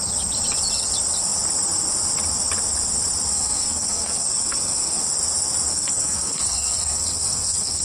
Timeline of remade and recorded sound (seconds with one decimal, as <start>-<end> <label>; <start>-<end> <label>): 0.0-3.3 recorded; 3.3-5.0 remade; 5.0-5.7 recorded; 5.7-7.8 remade